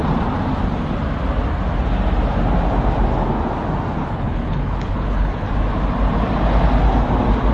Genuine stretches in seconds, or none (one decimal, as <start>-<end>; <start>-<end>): 0.0-4.0; 5.5-7.5